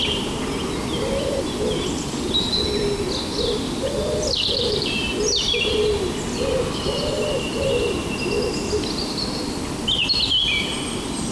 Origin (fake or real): real